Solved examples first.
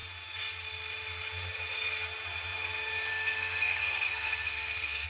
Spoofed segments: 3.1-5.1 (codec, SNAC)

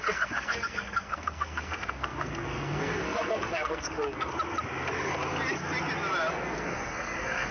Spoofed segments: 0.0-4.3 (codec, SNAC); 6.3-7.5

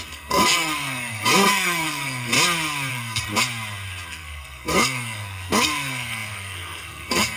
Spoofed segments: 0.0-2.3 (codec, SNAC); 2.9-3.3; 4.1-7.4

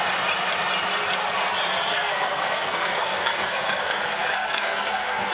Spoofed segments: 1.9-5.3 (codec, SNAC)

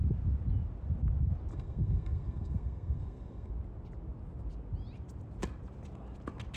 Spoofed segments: 1.5-3.5 (codec, SNAC)

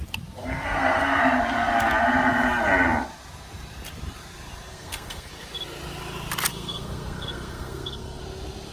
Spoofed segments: 0.4-1.2 (codec, SNAC); 4.7-5.3; 6.5-8.2